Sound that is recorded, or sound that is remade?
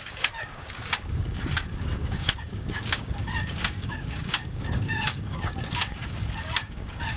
remade